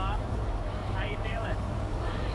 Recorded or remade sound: remade